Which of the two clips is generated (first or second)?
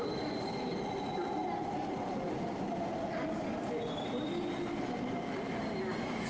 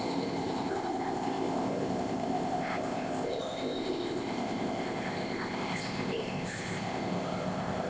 second